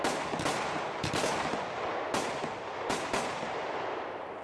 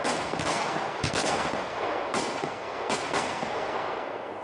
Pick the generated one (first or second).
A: second